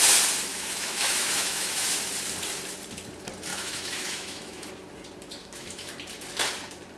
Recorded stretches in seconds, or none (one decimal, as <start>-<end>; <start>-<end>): 0.0-0.5; 1.9-3.5; 4.7-5.4; 5.9-7.0